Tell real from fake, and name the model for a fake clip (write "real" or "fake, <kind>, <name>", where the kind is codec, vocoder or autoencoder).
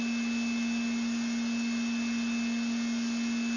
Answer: real